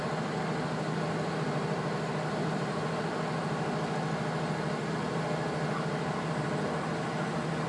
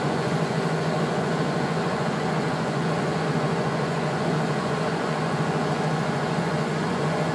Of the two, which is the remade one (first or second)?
second